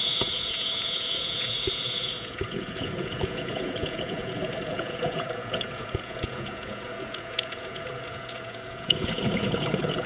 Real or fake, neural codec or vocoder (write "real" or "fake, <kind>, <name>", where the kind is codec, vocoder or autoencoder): fake, vocoder, Vocos